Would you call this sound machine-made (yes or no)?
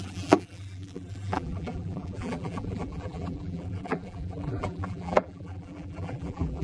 yes